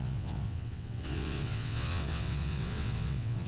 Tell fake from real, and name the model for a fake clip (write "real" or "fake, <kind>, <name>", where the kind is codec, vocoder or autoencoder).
fake, vocoder, WaveNeXt